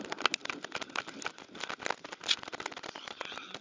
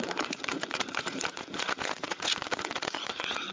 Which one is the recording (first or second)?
first